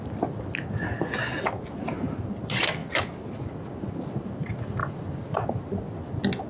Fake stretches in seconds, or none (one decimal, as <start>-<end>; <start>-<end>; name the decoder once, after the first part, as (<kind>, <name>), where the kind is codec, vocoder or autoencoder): none